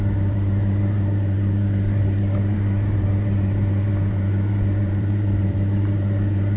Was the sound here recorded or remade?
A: remade